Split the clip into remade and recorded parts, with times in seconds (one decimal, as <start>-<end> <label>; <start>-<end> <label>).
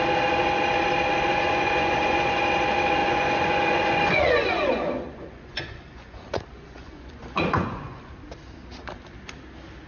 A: 0.0-1.3 recorded; 1.3-2.4 remade; 2.4-3.0 recorded; 3.0-8.1 remade; 8.1-9.9 recorded